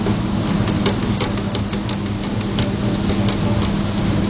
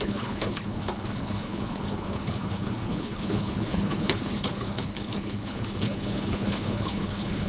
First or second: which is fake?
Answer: second